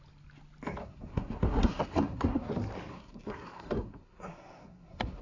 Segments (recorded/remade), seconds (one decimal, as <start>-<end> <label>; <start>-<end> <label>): 0.0-0.8 recorded; 0.8-2.5 remade; 2.5-2.9 recorded; 2.9-5.2 remade

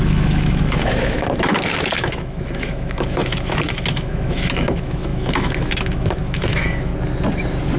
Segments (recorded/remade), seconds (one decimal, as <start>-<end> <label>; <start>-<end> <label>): 0.0-6.9 remade; 6.9-7.8 recorded

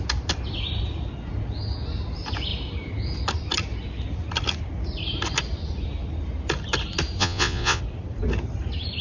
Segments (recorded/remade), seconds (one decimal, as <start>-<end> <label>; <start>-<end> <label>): 0.0-7.2 recorded; 7.2-7.8 remade; 7.8-9.0 recorded